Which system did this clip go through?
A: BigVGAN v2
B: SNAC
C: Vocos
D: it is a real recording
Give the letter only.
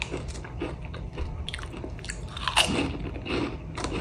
D